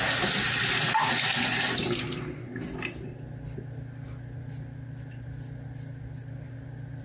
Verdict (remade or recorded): recorded